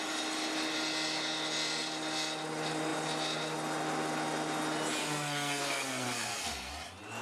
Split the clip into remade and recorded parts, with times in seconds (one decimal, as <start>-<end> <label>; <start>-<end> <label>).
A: 0.0-5.0 recorded; 5.0-6.7 remade; 6.7-7.2 recorded